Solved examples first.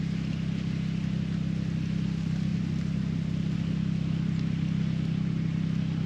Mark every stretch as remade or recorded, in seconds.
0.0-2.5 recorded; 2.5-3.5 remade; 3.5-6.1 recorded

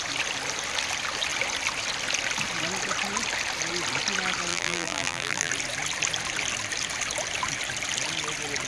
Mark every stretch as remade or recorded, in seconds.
0.0-4.5 recorded; 4.5-5.5 remade; 5.5-8.7 recorded

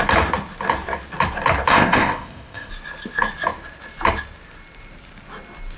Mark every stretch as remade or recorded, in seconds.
0.0-1.7 recorded; 1.7-2.7 remade; 2.7-5.8 recorded

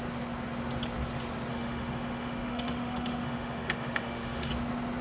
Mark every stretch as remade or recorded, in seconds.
0.0-1.5 recorded; 1.5-4.5 remade; 4.5-5.0 recorded

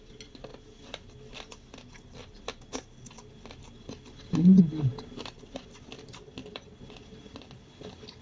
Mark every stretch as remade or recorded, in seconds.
0.0-8.2 recorded

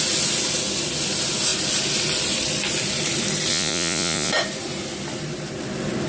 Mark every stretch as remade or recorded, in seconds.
0.0-3.5 recorded; 3.5-4.3 remade; 4.3-6.1 recorded